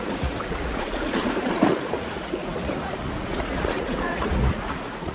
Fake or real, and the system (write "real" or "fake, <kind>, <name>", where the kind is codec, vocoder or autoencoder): fake, vocoder, Vocos